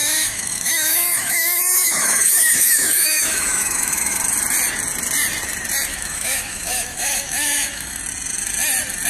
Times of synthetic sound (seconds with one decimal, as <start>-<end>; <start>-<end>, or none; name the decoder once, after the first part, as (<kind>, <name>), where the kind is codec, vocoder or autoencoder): 0.0-4.2 (autoencoder, DAC-VAE); 5.9-8.0